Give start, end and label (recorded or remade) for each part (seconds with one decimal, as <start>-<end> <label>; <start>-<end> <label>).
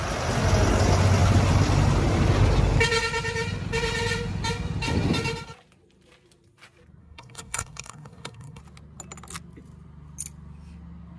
0.0-7.0 recorded; 7.0-8.6 remade; 8.6-11.2 recorded